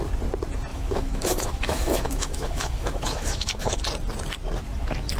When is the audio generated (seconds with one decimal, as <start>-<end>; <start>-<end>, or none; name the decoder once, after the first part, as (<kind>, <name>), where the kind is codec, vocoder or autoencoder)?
0.7-3.8 (autoencoder, DAC-VAE)